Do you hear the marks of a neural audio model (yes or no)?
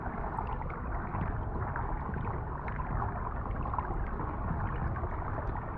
no